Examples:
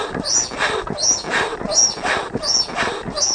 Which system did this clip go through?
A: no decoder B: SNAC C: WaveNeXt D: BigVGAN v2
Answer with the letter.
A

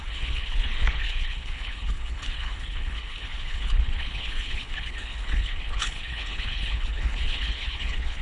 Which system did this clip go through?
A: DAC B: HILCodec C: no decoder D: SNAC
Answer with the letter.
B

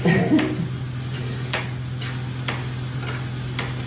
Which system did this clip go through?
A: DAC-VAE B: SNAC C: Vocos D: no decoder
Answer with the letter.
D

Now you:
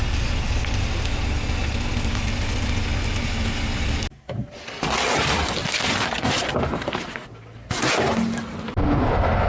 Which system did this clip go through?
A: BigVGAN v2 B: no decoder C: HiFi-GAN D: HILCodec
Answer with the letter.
B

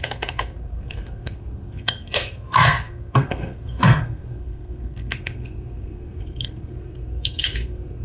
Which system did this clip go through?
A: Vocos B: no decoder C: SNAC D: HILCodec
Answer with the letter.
C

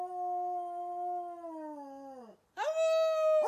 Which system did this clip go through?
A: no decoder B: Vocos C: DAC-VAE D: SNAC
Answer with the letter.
A